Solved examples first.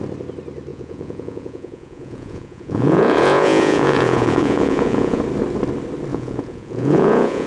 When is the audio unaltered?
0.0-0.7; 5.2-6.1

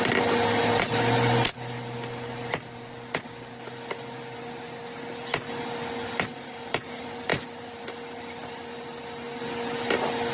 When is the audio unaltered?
0.0-10.3